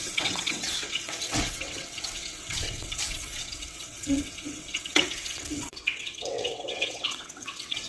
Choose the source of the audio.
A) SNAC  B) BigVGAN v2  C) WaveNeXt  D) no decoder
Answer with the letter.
C